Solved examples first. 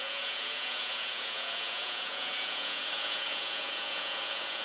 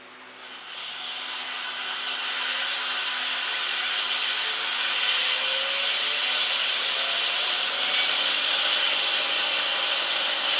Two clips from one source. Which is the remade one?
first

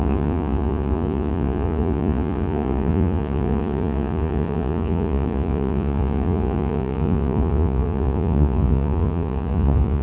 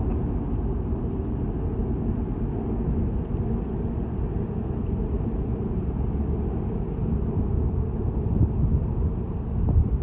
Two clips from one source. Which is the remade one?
first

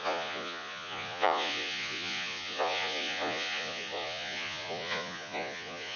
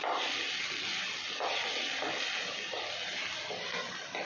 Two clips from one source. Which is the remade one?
first